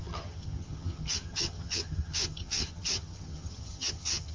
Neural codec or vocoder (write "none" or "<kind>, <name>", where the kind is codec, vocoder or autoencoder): vocoder, HiFi-GAN